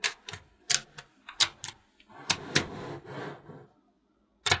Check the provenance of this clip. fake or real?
real